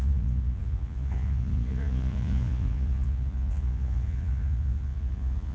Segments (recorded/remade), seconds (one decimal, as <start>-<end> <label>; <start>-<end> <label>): 0.0-5.5 remade